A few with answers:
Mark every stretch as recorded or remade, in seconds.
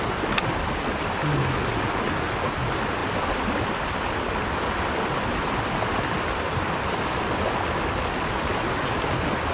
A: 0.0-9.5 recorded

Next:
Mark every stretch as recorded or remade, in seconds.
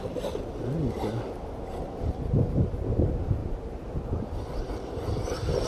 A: 0.0-5.7 recorded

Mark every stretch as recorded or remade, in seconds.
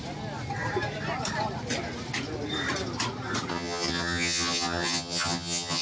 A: 0.0-3.5 recorded; 3.5-5.8 remade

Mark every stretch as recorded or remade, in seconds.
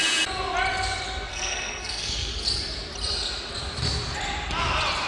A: 0.0-1.3 recorded; 1.3-2.3 remade; 2.3-5.1 recorded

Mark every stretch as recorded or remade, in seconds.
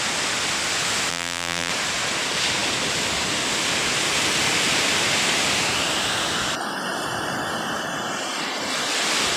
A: 0.0-1.1 recorded; 1.1-1.7 remade; 1.7-9.4 recorded